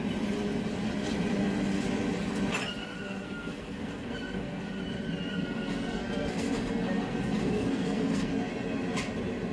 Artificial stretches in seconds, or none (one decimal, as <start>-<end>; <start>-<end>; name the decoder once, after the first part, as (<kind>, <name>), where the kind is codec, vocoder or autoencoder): 2.8-4.8 (codec, SNAC); 5.3-8.5